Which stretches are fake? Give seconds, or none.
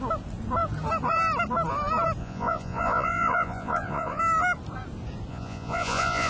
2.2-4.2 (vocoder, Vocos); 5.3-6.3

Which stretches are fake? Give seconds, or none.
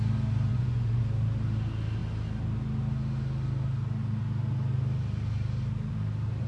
0.5-1.0 (vocoder, Vocos)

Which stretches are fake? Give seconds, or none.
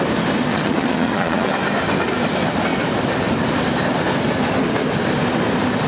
0.5-1.5 (vocoder, Vocos)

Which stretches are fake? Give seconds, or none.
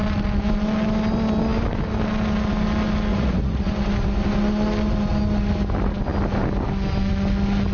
3.1-3.7 (vocoder, Vocos)